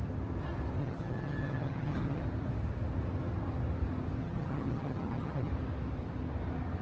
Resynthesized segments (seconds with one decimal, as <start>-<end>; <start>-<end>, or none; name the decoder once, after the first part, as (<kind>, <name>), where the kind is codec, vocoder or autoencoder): 0.8-2.2 (vocoder, HiFi-GAN); 4.2-5.5